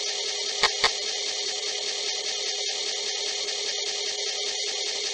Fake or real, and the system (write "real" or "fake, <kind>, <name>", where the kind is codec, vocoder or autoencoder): real